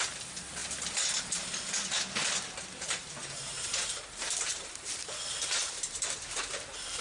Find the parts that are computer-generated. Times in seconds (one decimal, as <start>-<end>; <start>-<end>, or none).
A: 2.2-6.4